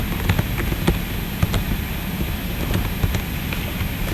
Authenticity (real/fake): real